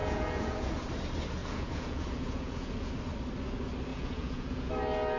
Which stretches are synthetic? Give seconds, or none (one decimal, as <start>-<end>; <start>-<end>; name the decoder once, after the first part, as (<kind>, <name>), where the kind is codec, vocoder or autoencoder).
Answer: 0.0-0.9 (vocoder, Vocos); 1.4-2.9; 3.9-4.7

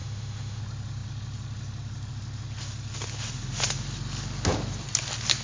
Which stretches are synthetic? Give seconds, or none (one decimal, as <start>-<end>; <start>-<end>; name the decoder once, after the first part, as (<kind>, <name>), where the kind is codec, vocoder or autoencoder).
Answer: 0.0-0.6 (autoencoder, DAC-VAE)

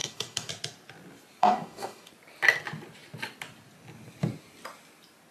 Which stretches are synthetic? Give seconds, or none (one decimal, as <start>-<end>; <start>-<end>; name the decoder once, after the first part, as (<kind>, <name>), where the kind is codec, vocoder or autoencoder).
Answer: 0.0-0.5 (codec, DAC); 1.4-2.1

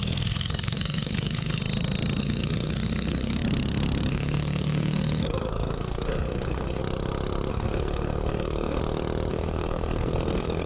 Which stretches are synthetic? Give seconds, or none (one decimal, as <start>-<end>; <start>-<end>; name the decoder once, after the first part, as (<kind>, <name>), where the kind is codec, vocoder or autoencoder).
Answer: 0.0-1.6 (codec, SNAC); 2.2-3.4; 4.1-6.8; 7.5-8.8; 9.3-10.7

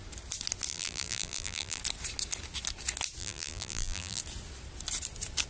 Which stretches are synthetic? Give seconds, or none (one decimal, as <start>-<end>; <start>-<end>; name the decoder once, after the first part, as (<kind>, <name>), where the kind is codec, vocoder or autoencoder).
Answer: 0.7-1.8 (vocoder, BigVGAN v2); 3.2-4.2

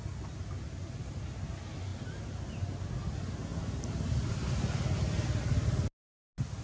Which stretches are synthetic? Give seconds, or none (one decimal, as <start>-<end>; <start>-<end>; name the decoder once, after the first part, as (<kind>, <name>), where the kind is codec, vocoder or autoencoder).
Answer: none